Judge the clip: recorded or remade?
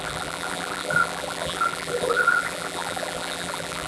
remade